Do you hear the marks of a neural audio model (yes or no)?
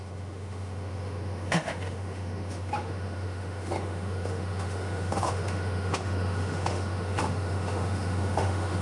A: yes